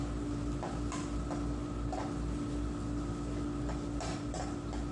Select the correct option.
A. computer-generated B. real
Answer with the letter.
B